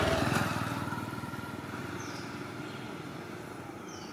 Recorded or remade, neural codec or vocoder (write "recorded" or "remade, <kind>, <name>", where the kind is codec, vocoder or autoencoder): recorded